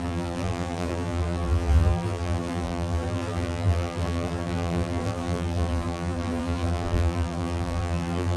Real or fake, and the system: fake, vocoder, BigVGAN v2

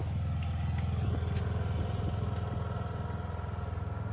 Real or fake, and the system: real